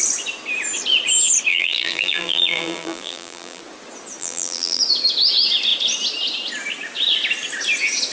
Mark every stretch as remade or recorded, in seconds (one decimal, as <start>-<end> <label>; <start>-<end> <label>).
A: 0.0-1.5 recorded; 1.5-3.6 remade; 3.6-4.2 recorded; 4.2-4.8 remade; 4.8-8.1 recorded